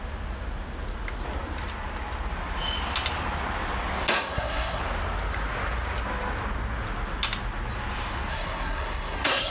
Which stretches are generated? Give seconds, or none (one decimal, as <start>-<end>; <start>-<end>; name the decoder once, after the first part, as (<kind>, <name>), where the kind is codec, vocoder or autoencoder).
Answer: 4.1-4.8 (codec, SNAC); 8.3-9.5